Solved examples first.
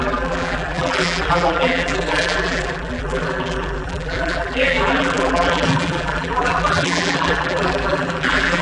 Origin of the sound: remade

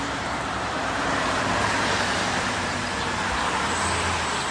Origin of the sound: remade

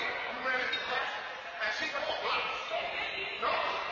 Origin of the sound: recorded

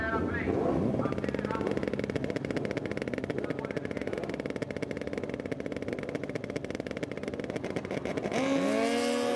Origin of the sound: recorded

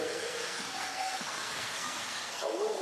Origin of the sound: remade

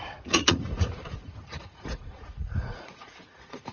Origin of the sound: remade